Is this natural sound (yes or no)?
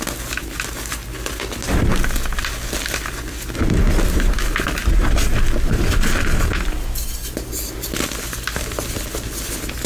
yes